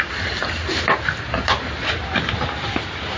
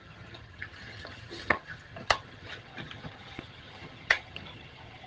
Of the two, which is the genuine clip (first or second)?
first